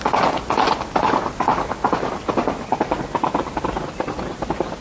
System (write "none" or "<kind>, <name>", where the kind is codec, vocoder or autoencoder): none